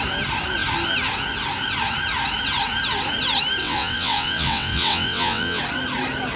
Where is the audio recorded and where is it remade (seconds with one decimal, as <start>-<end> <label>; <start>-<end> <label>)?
0.0-3.6 recorded; 3.6-5.6 remade; 5.6-6.4 recorded